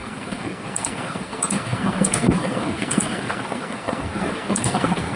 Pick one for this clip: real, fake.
fake